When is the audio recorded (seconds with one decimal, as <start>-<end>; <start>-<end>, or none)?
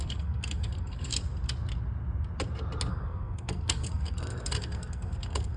1.1-2.9